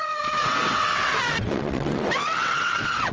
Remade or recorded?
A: remade